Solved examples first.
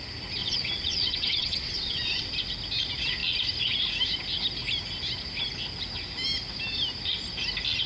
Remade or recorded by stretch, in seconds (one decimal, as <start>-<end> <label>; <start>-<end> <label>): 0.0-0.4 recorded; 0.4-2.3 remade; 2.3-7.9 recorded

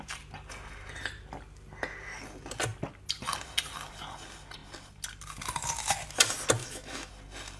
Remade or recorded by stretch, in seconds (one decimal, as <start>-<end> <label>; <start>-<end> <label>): 0.0-6.6 recorded; 6.6-7.1 remade; 7.1-7.6 recorded

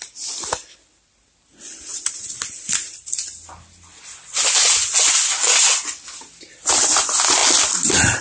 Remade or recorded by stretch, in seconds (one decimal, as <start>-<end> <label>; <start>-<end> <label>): 0.0-8.2 recorded

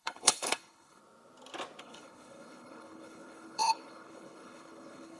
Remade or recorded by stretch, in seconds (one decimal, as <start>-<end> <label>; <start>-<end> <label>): 0.0-1.0 remade; 1.0-1.8 recorded; 1.8-5.2 remade

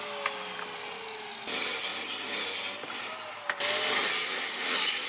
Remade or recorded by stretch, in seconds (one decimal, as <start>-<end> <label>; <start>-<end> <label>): 0.0-5.1 recorded

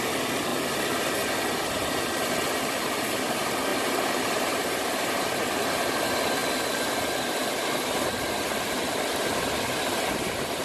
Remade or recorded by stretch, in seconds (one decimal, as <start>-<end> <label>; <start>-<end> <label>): 0.0-3.7 recorded; 3.7-6.0 remade; 6.0-10.6 recorded